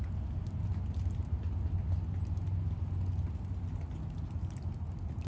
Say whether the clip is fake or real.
real